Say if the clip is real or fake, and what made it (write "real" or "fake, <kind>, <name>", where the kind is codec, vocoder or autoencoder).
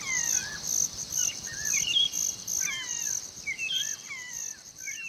real